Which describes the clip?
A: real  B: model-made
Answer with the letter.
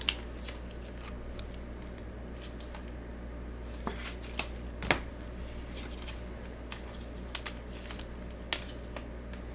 A